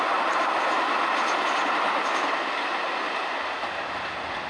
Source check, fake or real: real